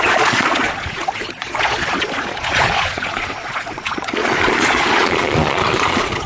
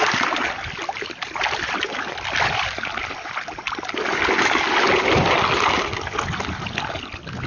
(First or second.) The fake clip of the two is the first